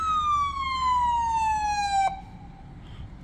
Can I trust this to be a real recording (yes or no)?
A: yes